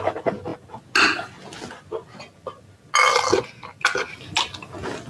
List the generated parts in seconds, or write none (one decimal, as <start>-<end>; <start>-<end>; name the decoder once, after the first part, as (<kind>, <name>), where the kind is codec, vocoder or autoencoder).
none